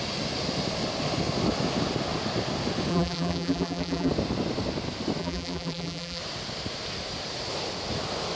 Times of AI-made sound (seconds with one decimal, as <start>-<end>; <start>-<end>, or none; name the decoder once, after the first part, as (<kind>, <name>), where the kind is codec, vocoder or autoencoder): 2.9-4.1 (vocoder, BigVGAN v2); 5.2-6.2